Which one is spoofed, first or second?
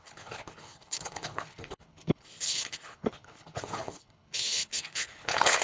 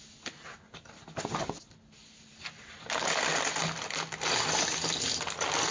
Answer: first